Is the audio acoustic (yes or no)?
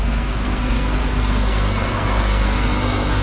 no